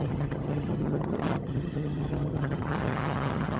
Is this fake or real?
fake